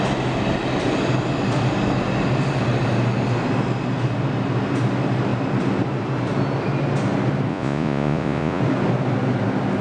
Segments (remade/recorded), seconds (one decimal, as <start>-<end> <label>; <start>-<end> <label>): 0.0-7.5 recorded; 7.5-8.6 remade; 8.6-9.8 recorded